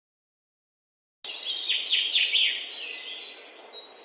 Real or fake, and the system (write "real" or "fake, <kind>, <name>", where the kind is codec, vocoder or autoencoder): real